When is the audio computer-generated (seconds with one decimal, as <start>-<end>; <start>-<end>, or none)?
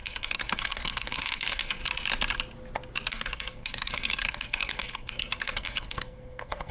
0.0-1.8; 3.1-6.7